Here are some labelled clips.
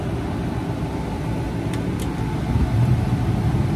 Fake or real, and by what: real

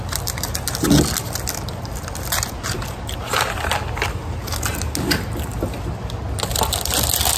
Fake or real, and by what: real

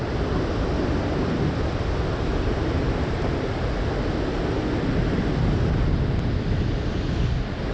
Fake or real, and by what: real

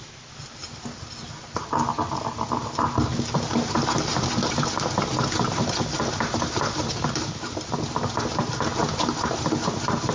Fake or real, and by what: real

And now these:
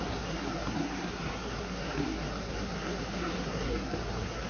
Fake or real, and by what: fake, codec, SNAC